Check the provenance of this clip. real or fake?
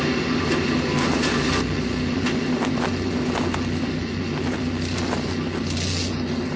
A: real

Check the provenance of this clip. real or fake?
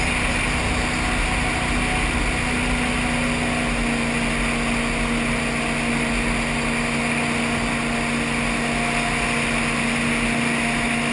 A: real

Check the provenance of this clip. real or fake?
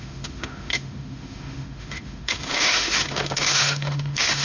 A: fake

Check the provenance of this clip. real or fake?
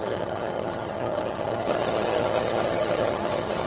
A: fake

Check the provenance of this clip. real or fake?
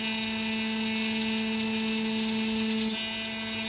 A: real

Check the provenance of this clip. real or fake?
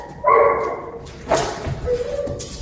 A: real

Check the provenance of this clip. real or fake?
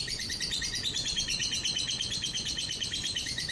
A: fake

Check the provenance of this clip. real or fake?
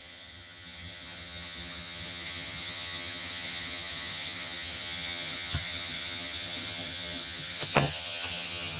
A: fake